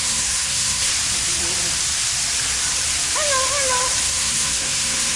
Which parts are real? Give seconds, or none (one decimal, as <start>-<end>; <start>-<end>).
0.9-4.0